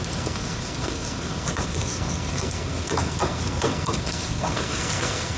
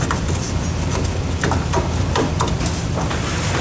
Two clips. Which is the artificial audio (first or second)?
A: first